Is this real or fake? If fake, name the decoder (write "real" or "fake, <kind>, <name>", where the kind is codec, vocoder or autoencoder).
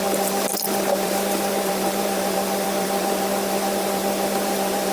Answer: fake, vocoder, BigVGAN v2